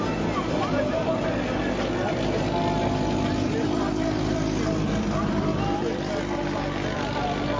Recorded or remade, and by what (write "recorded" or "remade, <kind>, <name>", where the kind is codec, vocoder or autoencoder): recorded